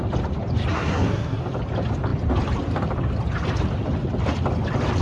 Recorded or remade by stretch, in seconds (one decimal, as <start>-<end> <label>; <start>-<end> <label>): 0.0-0.7 recorded; 0.7-1.4 remade; 1.4-5.0 recorded